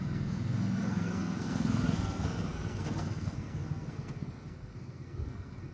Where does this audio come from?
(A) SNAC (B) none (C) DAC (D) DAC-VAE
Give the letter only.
A